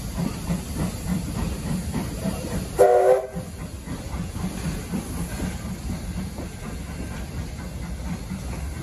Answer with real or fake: real